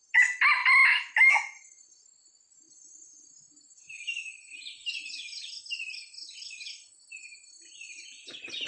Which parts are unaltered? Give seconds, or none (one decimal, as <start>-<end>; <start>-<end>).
0.0-8.7